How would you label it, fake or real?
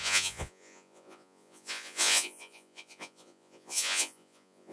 fake